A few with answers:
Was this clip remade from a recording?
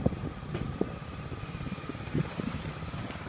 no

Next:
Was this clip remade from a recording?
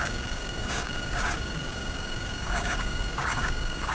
yes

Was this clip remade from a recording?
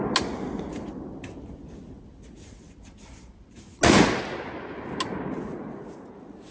no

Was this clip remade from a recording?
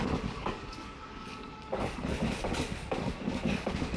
yes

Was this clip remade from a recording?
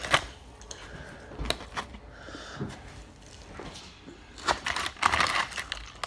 no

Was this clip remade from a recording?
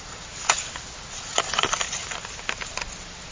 no